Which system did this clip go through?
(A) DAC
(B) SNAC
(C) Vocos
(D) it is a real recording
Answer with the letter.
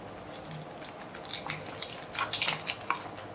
D